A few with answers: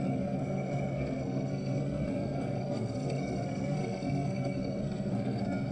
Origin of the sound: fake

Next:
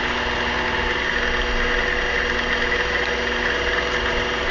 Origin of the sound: real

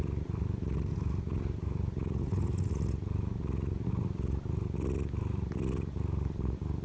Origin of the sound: real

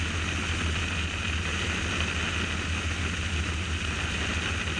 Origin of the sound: real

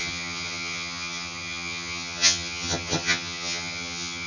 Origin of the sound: fake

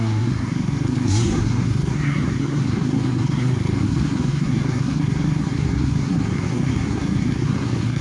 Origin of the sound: fake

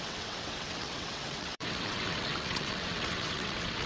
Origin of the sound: fake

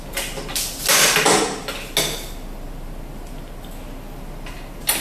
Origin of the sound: real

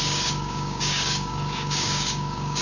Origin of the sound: fake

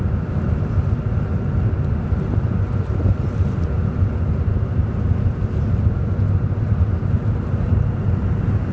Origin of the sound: real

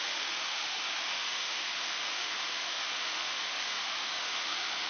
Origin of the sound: fake